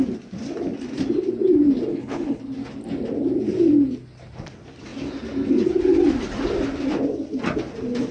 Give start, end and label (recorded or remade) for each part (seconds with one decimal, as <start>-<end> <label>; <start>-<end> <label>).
0.0-1.9 recorded; 1.9-2.4 remade; 2.4-8.1 recorded